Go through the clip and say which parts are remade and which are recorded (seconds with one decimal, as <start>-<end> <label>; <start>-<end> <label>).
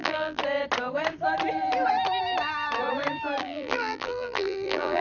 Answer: 0.0-0.4 remade; 0.4-3.4 recorded; 3.4-5.0 remade